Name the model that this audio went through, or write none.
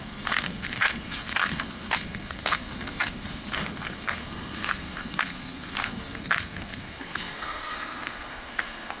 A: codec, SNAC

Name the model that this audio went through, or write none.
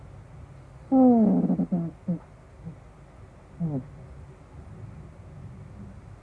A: none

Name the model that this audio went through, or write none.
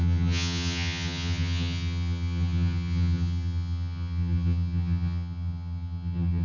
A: vocoder, HiFi-GAN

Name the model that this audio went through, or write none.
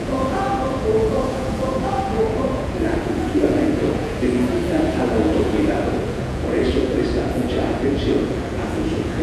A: vocoder, Vocos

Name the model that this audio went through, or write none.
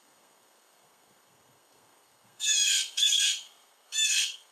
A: codec, SNAC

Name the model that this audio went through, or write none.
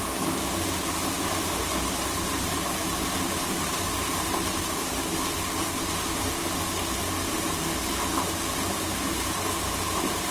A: none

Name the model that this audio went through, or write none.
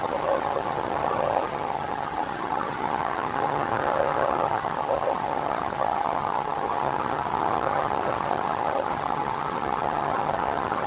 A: vocoder, HiFi-GAN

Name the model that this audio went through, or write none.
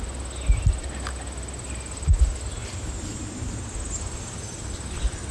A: none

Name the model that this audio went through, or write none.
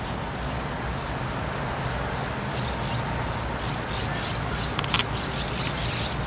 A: none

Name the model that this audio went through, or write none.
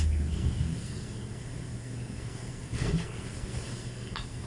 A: codec, SNAC